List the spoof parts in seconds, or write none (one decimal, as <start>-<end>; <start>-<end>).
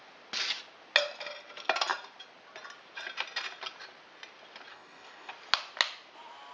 4.7-5.3